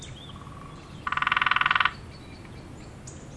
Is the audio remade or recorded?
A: recorded